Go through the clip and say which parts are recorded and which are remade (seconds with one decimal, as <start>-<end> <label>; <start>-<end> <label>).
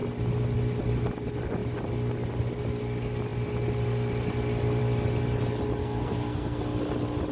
0.0-5.8 recorded; 5.8-6.6 remade; 6.6-7.3 recorded